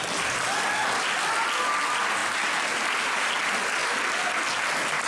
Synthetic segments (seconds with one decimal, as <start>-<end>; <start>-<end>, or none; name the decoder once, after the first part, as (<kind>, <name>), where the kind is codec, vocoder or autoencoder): 2.2-3.3 (vocoder, BigVGAN v2)